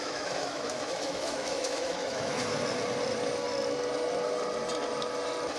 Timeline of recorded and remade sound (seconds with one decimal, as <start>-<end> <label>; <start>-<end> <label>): 0.0-2.3 remade; 2.3-5.6 recorded